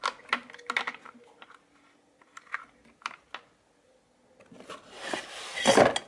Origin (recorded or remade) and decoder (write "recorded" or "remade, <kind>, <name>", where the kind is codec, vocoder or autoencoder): recorded